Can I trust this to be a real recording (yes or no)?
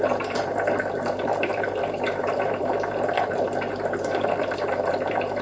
no